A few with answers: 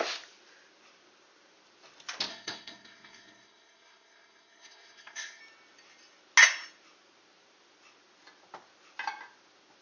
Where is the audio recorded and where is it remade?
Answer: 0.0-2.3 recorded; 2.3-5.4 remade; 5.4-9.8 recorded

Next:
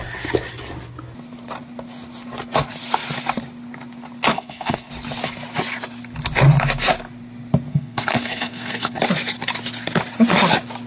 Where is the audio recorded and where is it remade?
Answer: 0.0-4.3 recorded; 4.3-4.9 remade; 4.9-7.7 recorded; 7.7-9.0 remade; 9.0-10.9 recorded

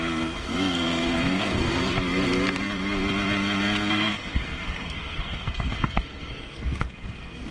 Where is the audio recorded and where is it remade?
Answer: 0.0-1.8 remade; 1.8-3.9 recorded; 3.9-7.5 remade

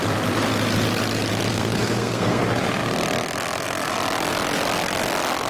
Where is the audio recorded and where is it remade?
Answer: 0.0-1.5 recorded; 1.5-2.4 remade; 2.4-5.5 recorded